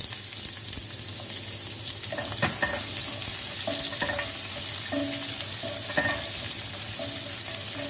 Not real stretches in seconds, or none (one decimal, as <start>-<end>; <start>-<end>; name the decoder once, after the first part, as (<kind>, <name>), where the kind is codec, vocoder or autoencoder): none